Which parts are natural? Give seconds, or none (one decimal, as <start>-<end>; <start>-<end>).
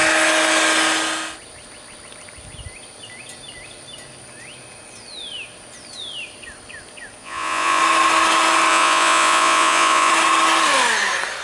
0.0-7.2; 7.8-8.7; 10.1-11.4